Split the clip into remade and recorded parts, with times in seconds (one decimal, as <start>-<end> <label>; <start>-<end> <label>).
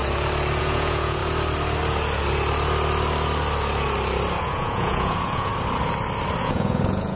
0.0-0.6 recorded; 0.6-1.2 remade; 1.2-4.4 recorded; 4.4-5.5 remade; 5.5-6.4 recorded; 6.4-7.2 remade